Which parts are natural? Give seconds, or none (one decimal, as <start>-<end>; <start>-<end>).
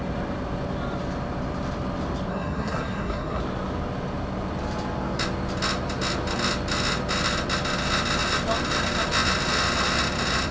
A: 0.0-2.3; 3.4-10.5